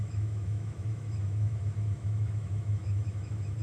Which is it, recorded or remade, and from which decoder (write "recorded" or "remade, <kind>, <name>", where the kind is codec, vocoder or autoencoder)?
remade, autoencoder, DAC-VAE